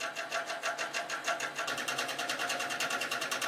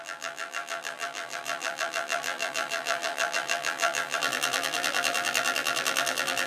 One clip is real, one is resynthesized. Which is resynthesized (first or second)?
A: second